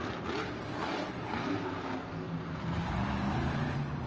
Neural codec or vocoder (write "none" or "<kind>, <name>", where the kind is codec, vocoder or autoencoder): vocoder, BigVGAN v2